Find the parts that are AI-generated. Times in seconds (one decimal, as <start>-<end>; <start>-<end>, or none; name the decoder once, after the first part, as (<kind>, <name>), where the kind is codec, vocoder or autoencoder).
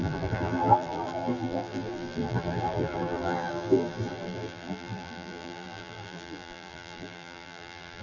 0.0-8.0 (vocoder, BigVGAN v2)